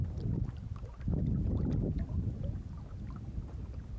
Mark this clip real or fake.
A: real